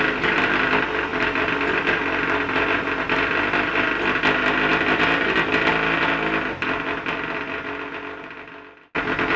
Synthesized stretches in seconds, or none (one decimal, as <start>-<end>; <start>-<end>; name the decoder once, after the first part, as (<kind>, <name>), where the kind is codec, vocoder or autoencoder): none